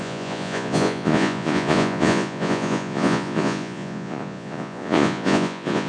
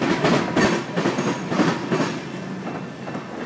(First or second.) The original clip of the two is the second